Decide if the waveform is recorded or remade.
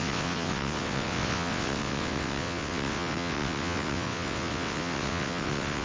remade